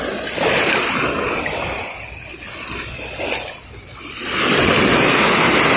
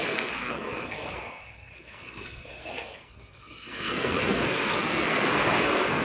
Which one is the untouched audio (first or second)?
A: first